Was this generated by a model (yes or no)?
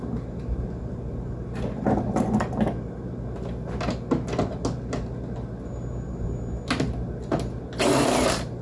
no